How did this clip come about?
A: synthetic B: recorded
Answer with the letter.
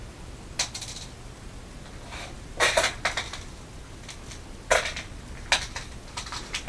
B